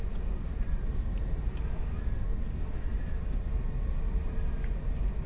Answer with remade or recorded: recorded